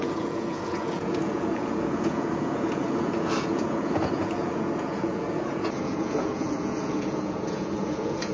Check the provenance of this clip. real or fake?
fake